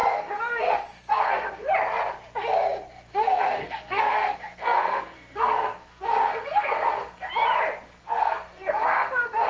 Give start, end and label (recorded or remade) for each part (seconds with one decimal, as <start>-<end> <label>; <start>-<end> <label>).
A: 0.0-1.7 remade; 1.7-3.1 recorded; 3.1-7.3 remade; 7.3-8.0 recorded; 8.0-9.5 remade